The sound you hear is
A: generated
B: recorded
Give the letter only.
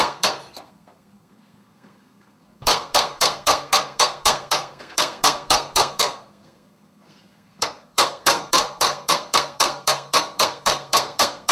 A